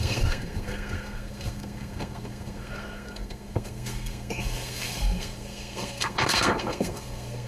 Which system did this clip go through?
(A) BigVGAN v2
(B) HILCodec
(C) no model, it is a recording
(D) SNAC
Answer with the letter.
D